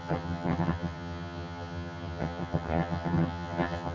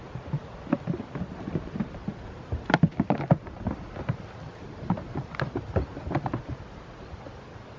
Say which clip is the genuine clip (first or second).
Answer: second